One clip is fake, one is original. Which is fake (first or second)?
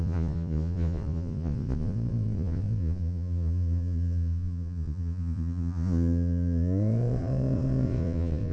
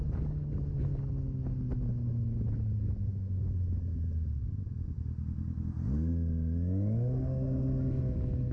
first